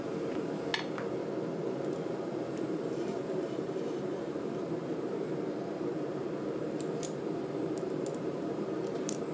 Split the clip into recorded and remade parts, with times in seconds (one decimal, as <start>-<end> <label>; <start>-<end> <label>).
0.0-0.7 remade; 0.7-1.8 recorded; 1.8-9.3 remade